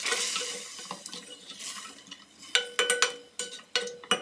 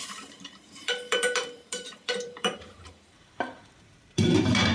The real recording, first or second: first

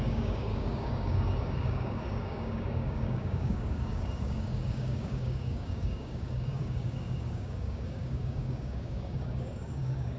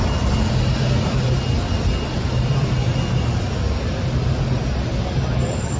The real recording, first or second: second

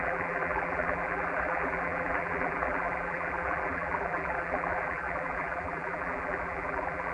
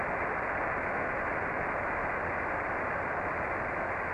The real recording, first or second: second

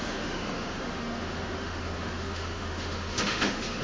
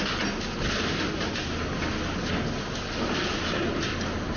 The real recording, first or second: second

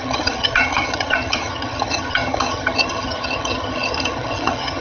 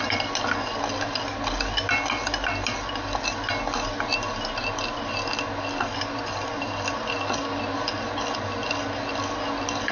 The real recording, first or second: second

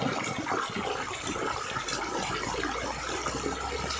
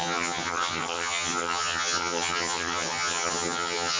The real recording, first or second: first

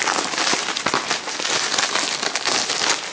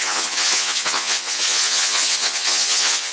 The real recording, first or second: first